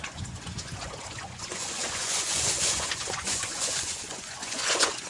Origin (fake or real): fake